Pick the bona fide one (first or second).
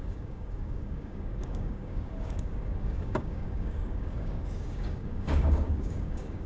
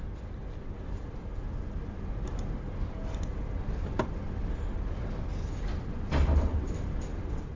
second